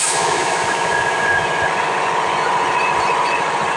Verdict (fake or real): fake